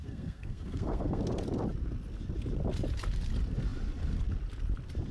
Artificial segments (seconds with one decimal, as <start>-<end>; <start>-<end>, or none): 0.0-1.2